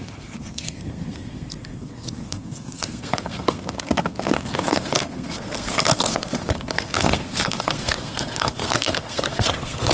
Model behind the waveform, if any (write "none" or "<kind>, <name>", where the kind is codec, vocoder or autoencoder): codec, SNAC